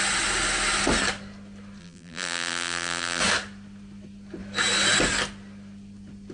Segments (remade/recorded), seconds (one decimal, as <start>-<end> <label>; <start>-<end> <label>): 0.0-1.8 recorded; 1.8-3.2 remade; 3.2-6.3 recorded